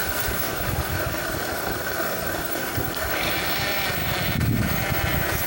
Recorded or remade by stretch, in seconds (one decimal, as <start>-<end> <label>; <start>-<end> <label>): 0.0-3.3 remade; 3.3-5.5 recorded